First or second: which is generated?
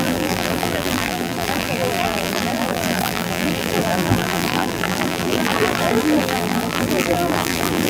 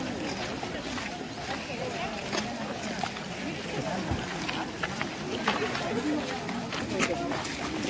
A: first